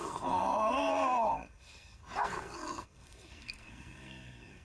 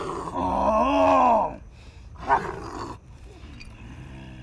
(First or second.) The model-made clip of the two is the first